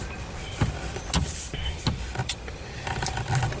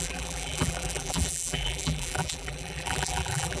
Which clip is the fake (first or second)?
second